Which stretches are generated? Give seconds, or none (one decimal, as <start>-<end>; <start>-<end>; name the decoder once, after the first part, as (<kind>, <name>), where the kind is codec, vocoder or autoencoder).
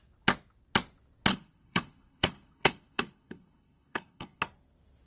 1.3-4.4 (codec, HILCodec)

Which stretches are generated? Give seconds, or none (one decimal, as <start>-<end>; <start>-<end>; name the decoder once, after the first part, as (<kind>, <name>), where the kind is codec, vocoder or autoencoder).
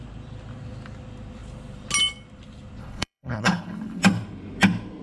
2.8-4.0 (codec, HILCodec)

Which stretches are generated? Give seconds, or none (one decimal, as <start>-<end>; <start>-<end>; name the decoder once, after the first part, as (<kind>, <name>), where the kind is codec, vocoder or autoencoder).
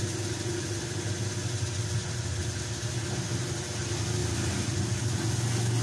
none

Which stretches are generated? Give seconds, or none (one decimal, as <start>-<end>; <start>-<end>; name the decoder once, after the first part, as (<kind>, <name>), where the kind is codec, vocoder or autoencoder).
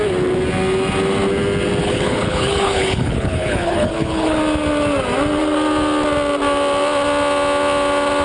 1.8-4.4 (codec, HILCodec)